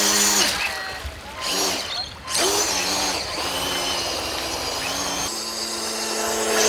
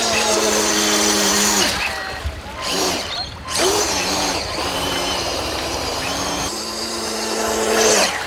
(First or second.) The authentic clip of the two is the first